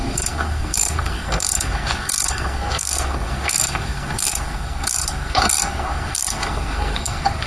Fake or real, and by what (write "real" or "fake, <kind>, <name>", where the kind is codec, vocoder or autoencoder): fake, codec, SNAC